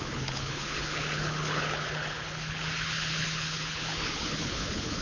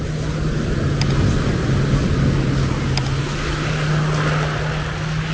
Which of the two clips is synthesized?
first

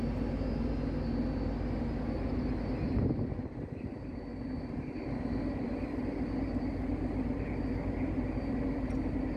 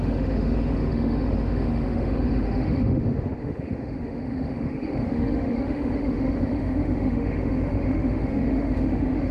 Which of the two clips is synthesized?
second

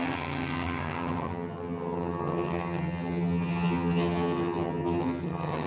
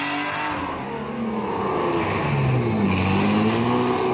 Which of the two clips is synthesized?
first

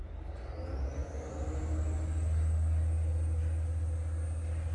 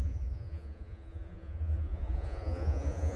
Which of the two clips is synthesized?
second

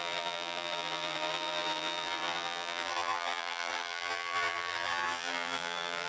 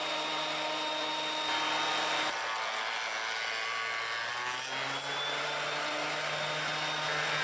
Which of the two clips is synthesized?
first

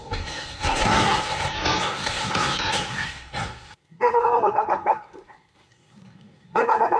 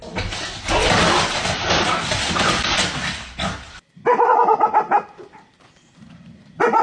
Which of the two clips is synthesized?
first